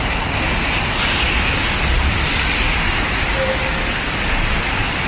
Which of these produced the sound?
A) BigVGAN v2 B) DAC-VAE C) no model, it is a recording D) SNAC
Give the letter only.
C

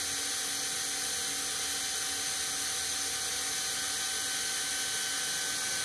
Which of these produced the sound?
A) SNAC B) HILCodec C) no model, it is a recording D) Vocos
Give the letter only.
C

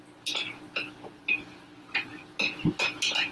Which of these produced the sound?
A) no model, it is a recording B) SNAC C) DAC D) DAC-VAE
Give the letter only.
A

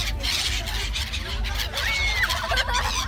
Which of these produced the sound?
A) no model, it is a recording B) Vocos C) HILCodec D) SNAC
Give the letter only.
A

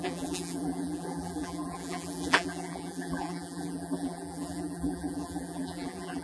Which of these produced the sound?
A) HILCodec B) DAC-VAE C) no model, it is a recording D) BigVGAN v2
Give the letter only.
D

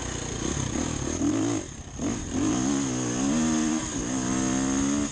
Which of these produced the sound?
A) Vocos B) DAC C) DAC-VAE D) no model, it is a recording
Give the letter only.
D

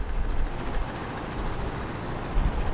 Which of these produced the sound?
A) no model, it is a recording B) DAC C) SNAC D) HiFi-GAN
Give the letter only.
A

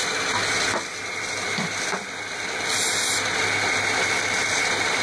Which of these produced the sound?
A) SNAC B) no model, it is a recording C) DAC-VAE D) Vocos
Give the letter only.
B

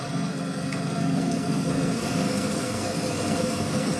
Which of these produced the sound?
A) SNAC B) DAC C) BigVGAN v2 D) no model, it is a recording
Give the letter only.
A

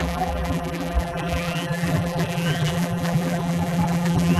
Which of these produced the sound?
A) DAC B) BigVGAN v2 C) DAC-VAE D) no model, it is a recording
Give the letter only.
B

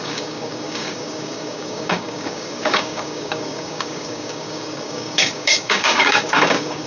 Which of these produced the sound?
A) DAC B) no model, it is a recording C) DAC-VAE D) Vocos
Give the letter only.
A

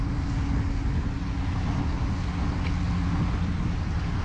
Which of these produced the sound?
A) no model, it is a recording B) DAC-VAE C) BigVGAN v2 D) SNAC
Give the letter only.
A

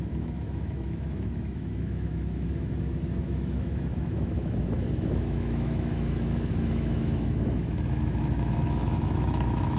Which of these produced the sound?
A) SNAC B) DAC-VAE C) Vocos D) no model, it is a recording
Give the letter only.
B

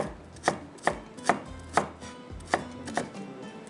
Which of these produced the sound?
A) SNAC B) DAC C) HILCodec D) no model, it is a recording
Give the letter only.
D